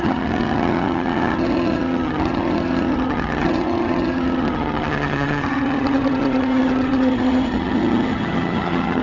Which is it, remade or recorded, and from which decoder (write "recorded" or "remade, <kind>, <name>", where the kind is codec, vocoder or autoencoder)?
remade, vocoder, HiFi-GAN